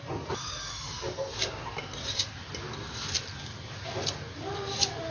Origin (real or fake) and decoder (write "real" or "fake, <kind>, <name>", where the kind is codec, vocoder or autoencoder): real